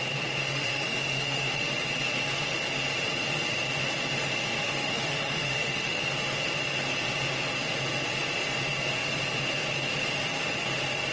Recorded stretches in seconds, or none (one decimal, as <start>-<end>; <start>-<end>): 0.0-0.4; 1.7-4.6; 6.0-11.1